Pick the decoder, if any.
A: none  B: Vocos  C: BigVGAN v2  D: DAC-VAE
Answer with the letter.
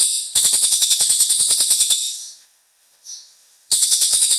D